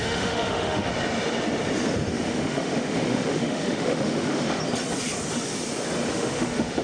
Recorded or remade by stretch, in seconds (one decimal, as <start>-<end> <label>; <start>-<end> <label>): 0.0-0.9 remade; 0.9-2.1 recorded; 2.1-4.6 remade; 4.6-6.1 recorded; 6.1-6.8 remade